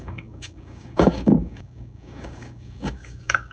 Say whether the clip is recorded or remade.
remade